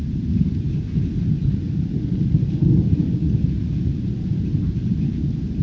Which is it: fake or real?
real